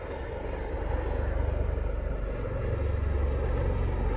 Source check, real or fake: real